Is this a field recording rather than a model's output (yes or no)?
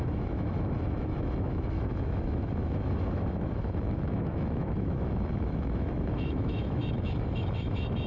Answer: no